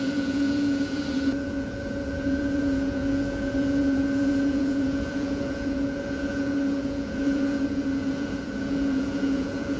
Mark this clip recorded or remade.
remade